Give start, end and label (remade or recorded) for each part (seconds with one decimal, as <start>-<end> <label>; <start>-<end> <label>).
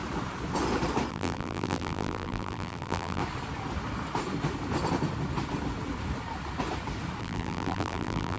0.0-1.1 recorded; 1.1-3.2 remade; 3.2-7.2 recorded; 7.2-8.4 remade